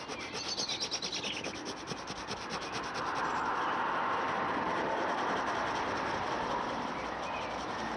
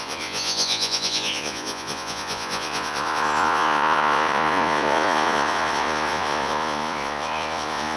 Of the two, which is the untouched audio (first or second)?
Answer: first